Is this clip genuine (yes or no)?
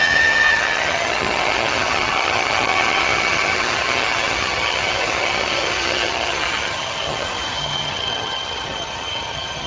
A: no